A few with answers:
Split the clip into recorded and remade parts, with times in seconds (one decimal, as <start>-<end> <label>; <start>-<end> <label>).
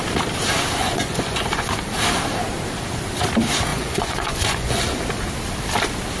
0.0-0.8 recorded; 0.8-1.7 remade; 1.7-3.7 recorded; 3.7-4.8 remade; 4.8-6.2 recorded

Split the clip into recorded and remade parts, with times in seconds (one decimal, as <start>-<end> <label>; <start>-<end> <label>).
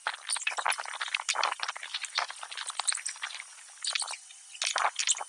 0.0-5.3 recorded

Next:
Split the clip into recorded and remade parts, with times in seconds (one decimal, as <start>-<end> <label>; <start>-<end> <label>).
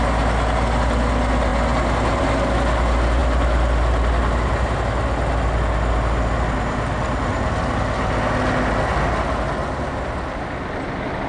0.0-11.3 recorded